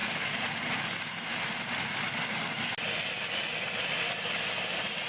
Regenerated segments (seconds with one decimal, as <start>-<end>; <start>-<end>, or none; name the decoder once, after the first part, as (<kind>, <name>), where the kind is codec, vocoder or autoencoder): none